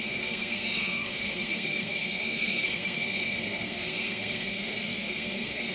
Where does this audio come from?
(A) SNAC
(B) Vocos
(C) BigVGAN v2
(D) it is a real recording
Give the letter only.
A